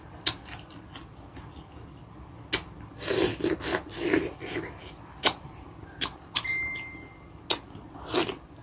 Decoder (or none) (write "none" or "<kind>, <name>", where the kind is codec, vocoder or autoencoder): none